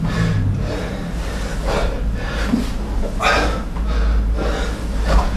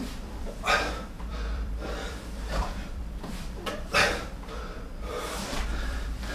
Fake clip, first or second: second